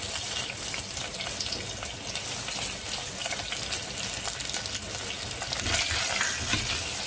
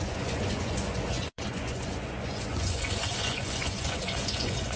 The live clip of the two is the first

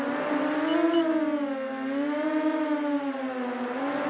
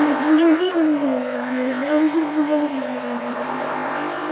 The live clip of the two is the first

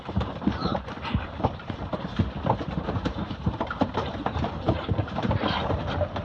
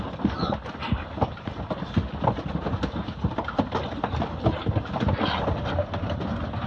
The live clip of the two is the second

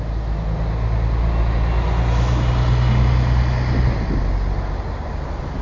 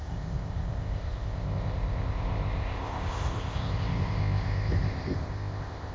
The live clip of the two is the first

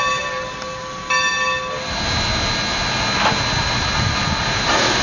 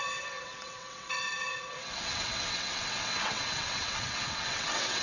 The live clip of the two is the first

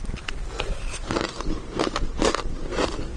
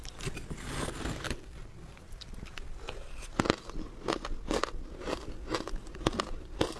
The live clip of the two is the second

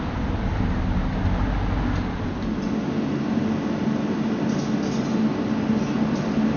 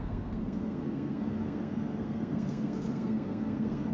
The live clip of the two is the first